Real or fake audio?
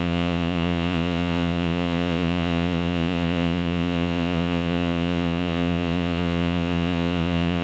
fake